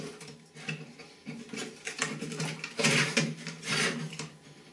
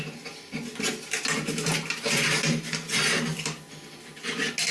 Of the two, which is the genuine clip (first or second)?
second